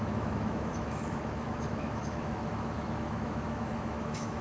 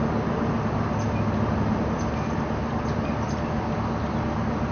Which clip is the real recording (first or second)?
second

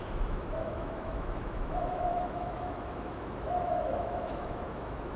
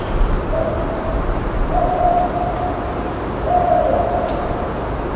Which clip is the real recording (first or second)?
second